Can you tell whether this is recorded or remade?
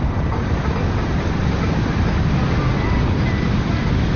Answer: recorded